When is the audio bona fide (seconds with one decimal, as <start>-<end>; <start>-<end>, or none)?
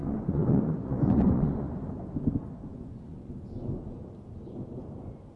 1.7-2.7; 3.3-5.4